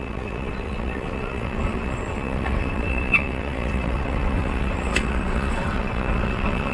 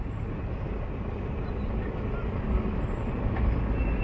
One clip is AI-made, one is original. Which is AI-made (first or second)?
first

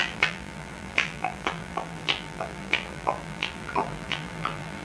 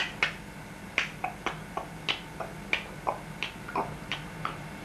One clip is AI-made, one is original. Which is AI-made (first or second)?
first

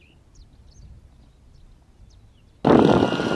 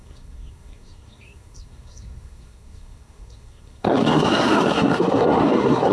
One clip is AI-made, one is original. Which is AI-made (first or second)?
second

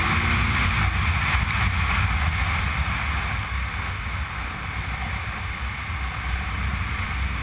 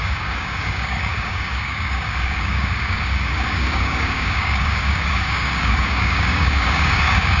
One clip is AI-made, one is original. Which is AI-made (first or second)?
second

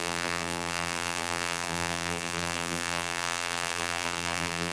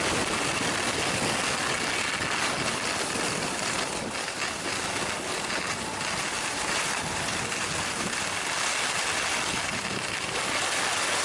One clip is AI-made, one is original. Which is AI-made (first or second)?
first